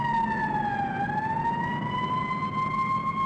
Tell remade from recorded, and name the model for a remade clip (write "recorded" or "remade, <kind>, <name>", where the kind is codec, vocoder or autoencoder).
recorded